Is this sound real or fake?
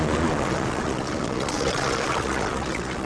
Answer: fake